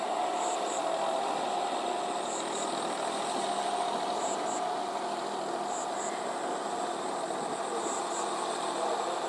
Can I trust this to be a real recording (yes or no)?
yes